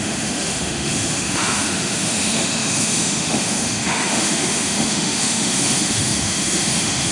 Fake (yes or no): yes